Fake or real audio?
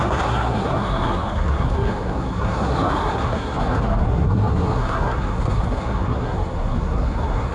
fake